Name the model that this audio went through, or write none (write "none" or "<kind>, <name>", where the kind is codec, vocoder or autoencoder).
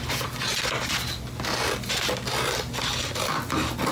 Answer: none